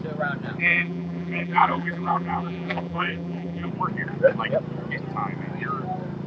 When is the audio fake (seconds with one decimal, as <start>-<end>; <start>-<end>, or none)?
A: 0.6-3.7